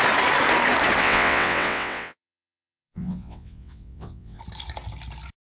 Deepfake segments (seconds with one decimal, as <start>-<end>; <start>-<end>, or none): 1.0-4.4